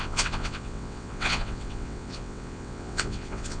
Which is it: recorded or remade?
remade